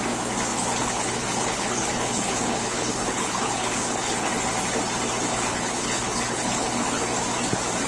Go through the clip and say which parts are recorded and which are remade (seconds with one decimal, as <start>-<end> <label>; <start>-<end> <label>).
0.0-0.5 recorded; 0.5-4.3 remade; 4.3-5.3 recorded; 5.3-7.0 remade; 7.0-7.9 recorded